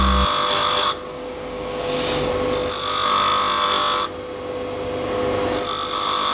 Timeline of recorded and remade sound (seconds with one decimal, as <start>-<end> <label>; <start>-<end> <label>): 0.0-1.1 recorded; 1.1-2.3 remade; 2.3-6.3 recorded